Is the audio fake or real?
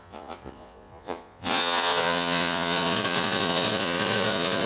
fake